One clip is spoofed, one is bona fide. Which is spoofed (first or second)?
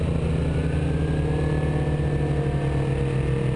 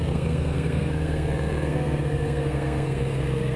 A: second